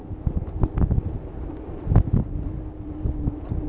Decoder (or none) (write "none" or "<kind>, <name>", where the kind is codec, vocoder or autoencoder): none